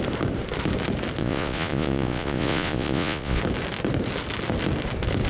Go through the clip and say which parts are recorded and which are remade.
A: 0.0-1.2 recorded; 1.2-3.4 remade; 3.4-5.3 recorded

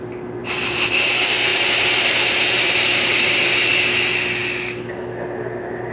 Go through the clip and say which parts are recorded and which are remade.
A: 0.0-0.4 recorded; 0.4-1.1 remade; 1.1-1.5 recorded; 1.5-3.7 remade; 3.7-5.9 recorded

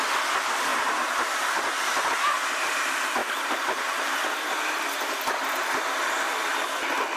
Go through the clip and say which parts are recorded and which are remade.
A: 0.0-0.7 recorded; 0.7-1.5 remade; 1.5-3.2 recorded; 3.2-4.1 remade; 4.1-7.2 recorded

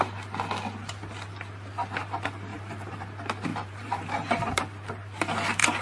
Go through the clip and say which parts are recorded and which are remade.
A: 0.0-2.5 recorded; 2.5-3.0 remade; 3.0-3.5 recorded; 3.5-4.6 remade; 4.6-5.8 recorded

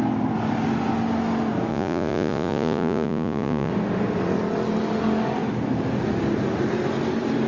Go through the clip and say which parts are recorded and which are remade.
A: 0.0-1.7 recorded; 1.7-3.7 remade; 3.7-7.5 recorded

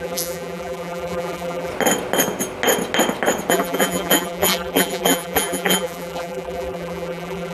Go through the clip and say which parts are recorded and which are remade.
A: 0.0-1.7 remade; 1.7-3.5 recorded; 3.5-7.5 remade